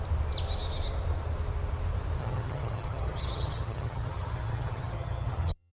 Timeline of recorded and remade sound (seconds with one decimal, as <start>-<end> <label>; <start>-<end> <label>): 0.0-2.2 recorded; 2.2-5.7 remade